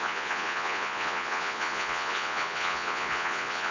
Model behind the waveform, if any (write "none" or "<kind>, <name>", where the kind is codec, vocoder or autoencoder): vocoder, Vocos